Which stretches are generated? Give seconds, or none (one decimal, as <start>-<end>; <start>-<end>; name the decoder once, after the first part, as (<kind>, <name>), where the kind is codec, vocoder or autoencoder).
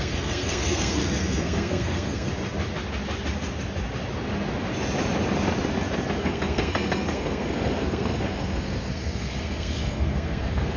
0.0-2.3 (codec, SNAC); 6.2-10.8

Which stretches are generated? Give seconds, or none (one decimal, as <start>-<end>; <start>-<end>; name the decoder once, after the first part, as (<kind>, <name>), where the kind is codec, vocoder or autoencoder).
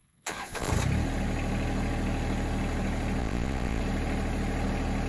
0.0-0.7 (vocoder, Vocos); 3.2-3.8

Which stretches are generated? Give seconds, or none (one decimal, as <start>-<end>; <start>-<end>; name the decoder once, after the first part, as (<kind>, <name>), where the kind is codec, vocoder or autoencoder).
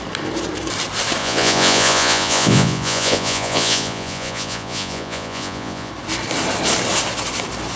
1.2-5.9 (vocoder, Vocos)